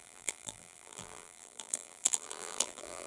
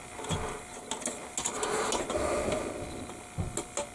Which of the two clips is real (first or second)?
second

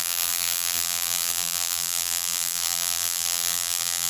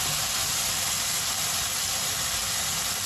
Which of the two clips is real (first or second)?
second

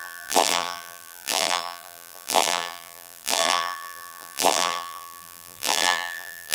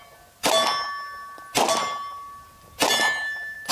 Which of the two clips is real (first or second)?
second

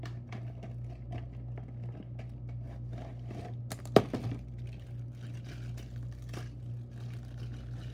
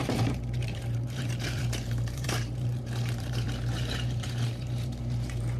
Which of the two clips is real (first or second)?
first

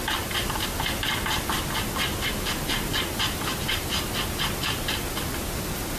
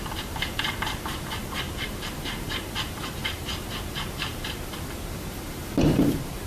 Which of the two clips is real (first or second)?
first